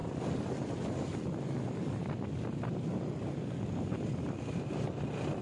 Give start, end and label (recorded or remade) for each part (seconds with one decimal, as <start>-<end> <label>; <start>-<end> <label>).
0.0-5.4 recorded